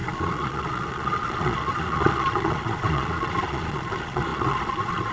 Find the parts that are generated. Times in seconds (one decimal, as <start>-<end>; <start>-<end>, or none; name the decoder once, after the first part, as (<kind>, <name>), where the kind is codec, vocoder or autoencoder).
0.0-5.1 (vocoder, Vocos)